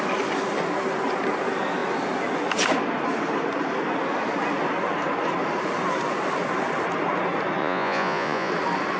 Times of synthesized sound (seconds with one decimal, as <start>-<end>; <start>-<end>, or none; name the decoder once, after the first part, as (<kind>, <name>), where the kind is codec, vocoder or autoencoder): 7.6-8.5 (vocoder, Vocos)